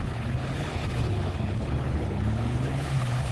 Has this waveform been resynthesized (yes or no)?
yes